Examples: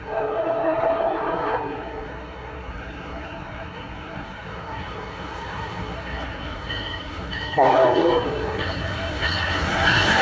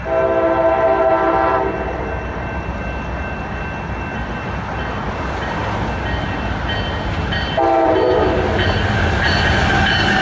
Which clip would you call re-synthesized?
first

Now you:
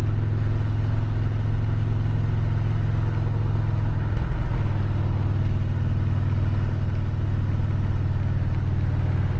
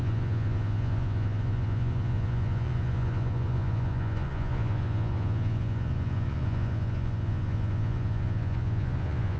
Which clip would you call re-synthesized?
second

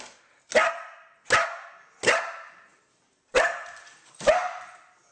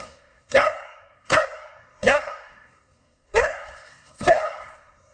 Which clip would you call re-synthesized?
second